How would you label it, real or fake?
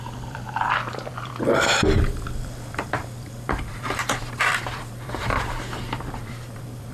fake